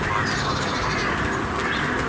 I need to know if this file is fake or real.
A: real